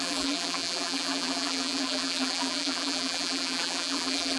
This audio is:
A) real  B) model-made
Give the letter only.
B